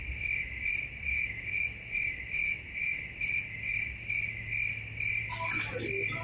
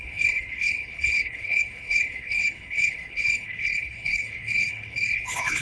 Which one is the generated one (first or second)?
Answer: second